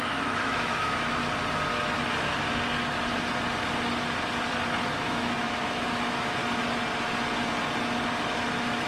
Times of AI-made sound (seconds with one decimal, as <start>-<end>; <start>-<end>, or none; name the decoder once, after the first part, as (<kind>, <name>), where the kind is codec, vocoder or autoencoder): 0.0-1.2 (autoencoder, DAC-VAE); 4.9-6.4; 8.5-8.9